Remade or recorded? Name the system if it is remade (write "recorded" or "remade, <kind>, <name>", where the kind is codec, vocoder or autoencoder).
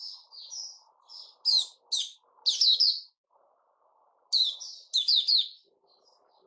recorded